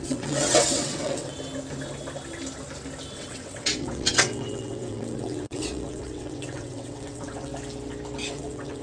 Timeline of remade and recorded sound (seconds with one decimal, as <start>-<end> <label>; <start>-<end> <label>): 0.0-1.3 remade; 1.3-3.1 recorded; 3.1-7.5 remade; 7.5-8.3 recorded; 8.3-8.8 remade